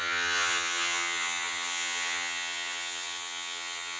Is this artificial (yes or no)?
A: yes